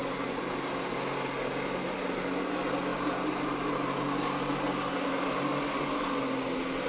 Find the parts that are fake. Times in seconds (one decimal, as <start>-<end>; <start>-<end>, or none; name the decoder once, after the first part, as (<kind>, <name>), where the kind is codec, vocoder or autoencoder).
none